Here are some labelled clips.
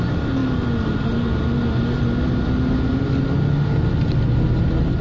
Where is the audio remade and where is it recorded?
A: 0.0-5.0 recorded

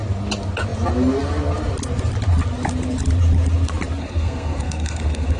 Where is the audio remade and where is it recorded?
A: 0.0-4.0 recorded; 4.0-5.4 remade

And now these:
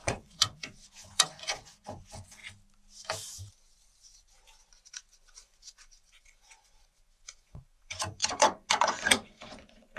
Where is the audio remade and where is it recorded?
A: 0.0-2.4 remade; 2.4-4.9 recorded; 4.9-10.0 remade

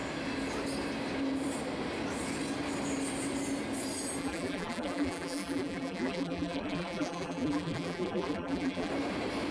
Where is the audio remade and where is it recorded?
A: 0.0-4.2 recorded; 4.2-8.9 remade; 8.9-9.5 recorded

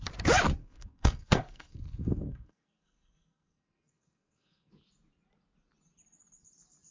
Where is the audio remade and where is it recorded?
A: 0.0-0.6 recorded; 0.6-4.7 remade; 4.7-6.9 recorded

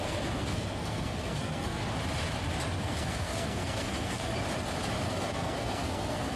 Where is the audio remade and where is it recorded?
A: 0.0-1.8 remade; 1.8-2.8 recorded; 2.8-4.3 remade; 4.3-5.1 recorded; 5.1-6.4 remade

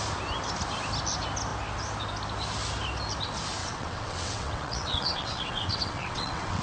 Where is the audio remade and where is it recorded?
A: 0.0-3.6 recorded; 3.6-6.6 remade